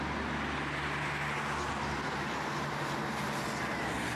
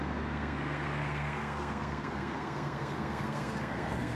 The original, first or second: first